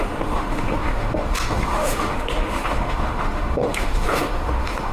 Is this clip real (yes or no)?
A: no